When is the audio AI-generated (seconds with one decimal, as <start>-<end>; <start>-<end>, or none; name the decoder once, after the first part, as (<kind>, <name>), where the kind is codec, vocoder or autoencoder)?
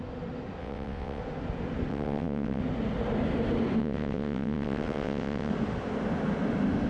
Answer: 0.6-1.2 (vocoder, WaveNeXt); 1.9-2.6; 3.8-5.5